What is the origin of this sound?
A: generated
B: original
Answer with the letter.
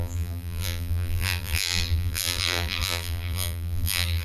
A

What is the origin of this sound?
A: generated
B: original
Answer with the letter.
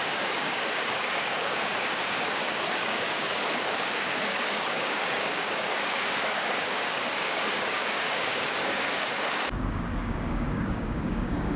A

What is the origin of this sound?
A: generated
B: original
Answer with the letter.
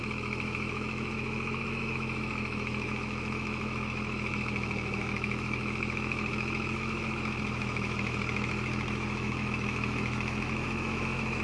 A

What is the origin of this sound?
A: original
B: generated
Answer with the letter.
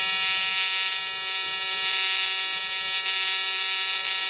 A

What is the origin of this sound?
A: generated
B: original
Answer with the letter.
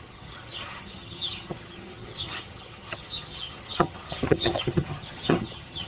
A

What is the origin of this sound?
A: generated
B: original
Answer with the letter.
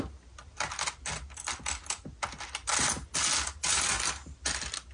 B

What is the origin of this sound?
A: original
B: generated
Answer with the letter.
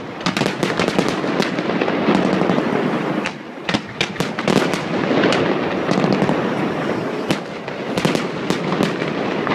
A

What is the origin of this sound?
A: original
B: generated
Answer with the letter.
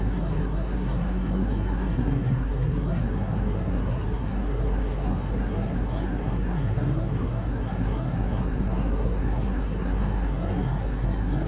B